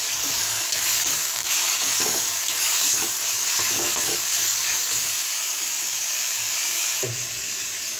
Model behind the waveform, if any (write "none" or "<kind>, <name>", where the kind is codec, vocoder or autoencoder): codec, DAC